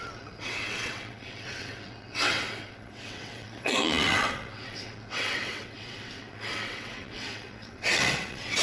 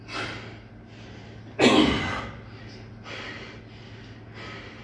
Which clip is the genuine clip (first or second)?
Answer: second